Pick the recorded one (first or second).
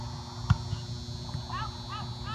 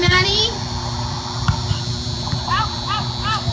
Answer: first